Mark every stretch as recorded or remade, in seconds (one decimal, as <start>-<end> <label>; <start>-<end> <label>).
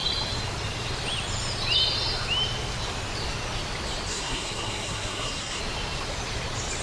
0.0-4.1 recorded; 4.1-5.6 remade; 5.6-6.8 recorded